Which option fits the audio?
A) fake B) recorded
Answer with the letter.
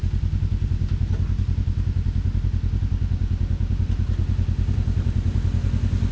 B